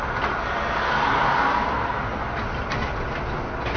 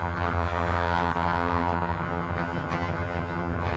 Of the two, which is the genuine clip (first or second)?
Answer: first